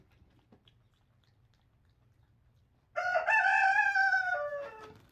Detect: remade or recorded recorded